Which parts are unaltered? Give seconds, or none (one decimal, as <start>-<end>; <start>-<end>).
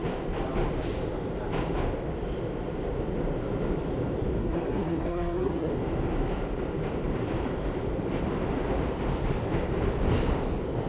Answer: 0.0-4.4; 5.7-10.9